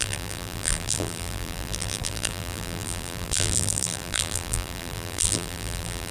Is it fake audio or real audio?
fake